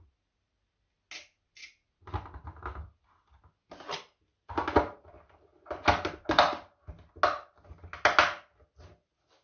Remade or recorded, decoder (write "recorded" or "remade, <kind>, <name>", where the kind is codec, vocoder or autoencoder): recorded